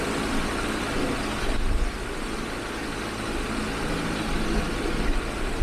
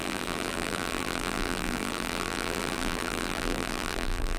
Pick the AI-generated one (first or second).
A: second